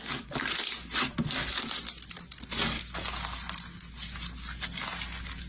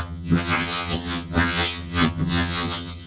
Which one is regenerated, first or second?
second